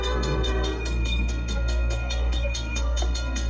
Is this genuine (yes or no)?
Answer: no